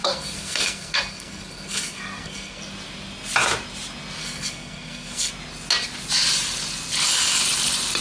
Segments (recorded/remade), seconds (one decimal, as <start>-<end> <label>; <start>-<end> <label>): 0.0-2.6 remade; 2.6-4.2 recorded; 4.2-5.3 remade; 5.3-8.0 recorded